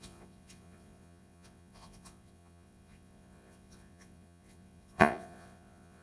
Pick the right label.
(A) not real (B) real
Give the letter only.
A